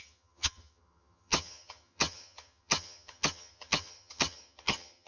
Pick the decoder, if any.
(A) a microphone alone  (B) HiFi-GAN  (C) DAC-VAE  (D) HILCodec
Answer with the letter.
B